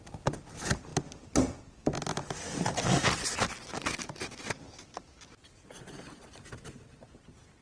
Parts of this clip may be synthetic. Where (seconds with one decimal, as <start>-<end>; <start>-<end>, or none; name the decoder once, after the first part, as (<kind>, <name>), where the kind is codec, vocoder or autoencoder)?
none